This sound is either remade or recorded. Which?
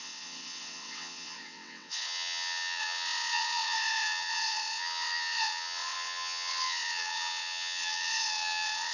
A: remade